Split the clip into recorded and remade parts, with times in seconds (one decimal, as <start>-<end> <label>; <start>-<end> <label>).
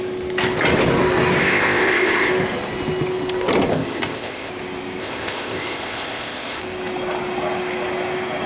0.0-1.4 recorded; 1.4-2.3 remade; 2.3-3.7 recorded; 3.7-4.5 remade; 4.5-5.0 recorded; 5.0-6.6 remade; 6.6-8.5 recorded